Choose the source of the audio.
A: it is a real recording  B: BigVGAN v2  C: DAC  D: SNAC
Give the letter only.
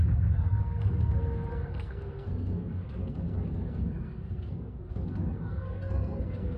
D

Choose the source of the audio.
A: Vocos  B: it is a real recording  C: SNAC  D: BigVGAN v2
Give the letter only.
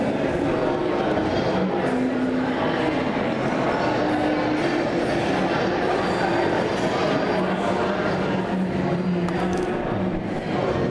B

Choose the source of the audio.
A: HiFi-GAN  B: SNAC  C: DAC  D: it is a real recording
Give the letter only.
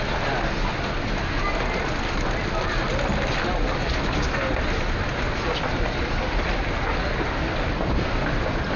D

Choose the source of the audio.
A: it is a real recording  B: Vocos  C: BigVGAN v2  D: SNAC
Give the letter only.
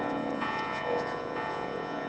B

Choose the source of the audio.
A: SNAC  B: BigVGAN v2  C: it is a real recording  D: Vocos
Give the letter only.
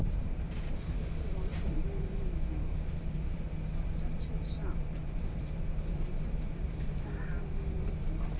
B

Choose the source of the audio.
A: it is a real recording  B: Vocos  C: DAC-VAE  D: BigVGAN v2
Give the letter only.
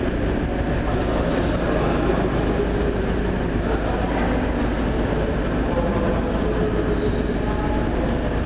A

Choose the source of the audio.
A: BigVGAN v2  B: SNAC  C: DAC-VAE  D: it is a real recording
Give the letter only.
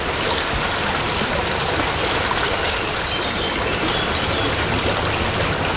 D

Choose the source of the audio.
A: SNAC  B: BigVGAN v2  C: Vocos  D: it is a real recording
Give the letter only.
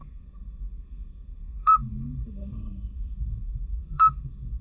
A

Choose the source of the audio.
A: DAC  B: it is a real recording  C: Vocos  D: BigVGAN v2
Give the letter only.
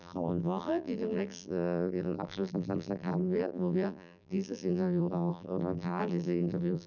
D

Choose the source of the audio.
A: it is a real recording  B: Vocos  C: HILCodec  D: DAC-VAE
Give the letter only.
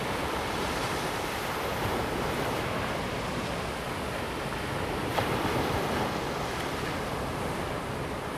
A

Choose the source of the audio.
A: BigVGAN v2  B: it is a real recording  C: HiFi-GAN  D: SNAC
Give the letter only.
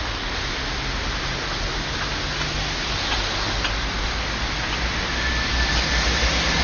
B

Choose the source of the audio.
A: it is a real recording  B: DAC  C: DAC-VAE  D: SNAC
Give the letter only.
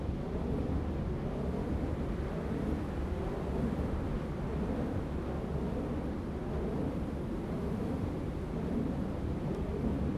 A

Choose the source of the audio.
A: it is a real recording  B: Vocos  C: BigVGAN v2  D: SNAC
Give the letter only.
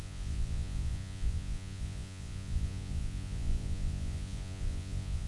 B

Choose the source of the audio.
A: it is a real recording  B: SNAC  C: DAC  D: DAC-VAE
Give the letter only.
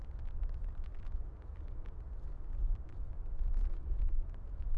A